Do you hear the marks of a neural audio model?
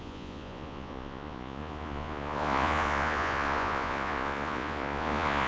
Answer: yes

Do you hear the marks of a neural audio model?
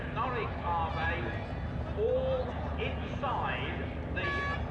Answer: no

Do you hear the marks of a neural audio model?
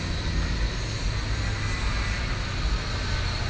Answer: no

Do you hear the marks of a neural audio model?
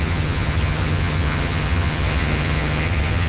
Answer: yes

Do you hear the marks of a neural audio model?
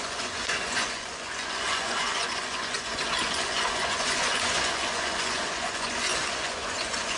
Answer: yes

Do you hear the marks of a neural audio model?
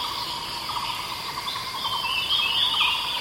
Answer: no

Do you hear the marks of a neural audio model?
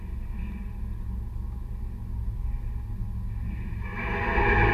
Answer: no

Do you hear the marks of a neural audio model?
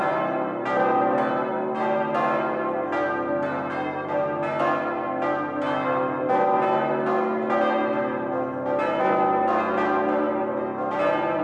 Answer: no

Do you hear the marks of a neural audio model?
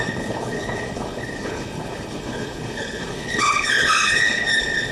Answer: yes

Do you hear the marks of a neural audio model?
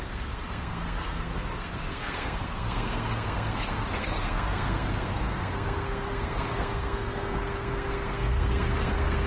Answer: yes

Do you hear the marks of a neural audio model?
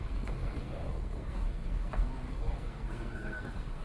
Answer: yes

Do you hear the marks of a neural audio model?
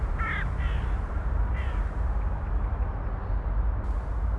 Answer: no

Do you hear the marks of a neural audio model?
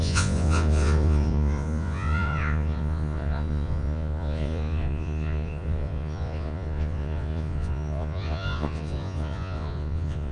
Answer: yes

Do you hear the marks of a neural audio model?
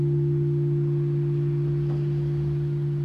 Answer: no